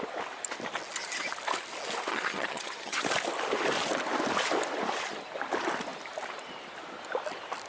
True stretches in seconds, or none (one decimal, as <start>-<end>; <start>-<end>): 0.0-2.1; 3.0-7.7